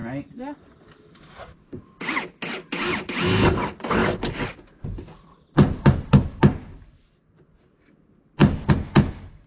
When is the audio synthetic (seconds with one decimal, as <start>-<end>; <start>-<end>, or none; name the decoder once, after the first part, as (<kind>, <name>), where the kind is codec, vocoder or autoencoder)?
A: none